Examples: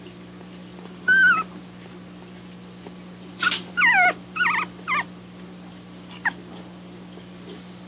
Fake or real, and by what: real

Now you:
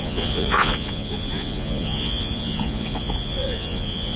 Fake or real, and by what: fake, vocoder, Vocos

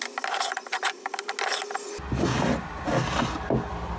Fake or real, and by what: real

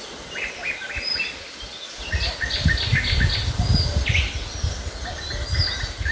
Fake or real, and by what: real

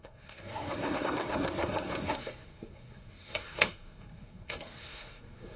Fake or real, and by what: fake, codec, SNAC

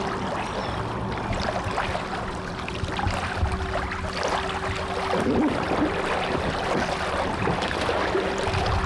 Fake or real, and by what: real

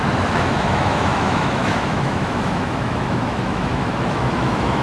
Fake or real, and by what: fake, autoencoder, DAC-VAE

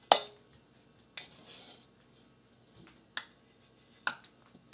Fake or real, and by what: real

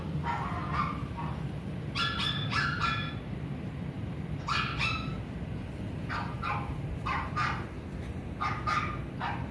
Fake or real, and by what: real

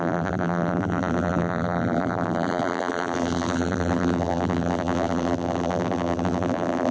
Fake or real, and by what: fake, vocoder, BigVGAN v2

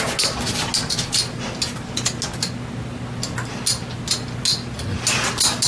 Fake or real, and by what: real